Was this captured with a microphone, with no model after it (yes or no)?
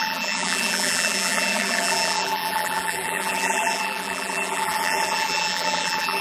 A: no